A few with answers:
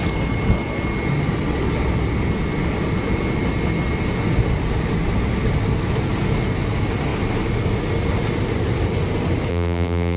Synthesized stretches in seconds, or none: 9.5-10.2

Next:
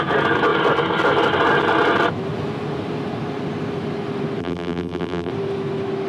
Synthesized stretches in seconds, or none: 4.4-5.3

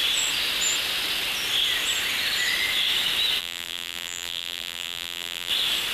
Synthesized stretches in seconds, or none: 3.4-5.5